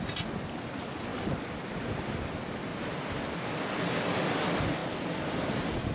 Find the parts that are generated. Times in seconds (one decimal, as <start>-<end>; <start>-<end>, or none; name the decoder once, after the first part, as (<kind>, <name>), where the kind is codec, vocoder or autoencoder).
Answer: none